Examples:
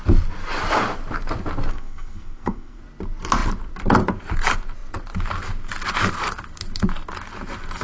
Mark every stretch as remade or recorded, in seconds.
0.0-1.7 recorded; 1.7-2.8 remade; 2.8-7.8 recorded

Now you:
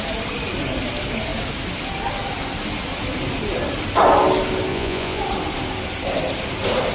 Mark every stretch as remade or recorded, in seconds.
0.0-4.7 recorded; 4.7-5.2 remade; 5.2-6.9 recorded

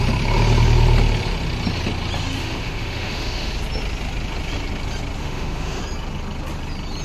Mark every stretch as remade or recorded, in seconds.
0.0-2.4 recorded; 2.4-3.5 remade; 3.5-5.2 recorded; 5.2-5.8 remade; 5.8-7.0 recorded

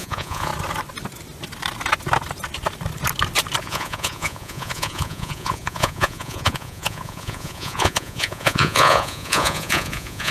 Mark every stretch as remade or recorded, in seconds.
0.0-0.5 remade; 0.5-3.6 recorded; 3.6-10.3 remade